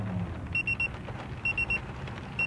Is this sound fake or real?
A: real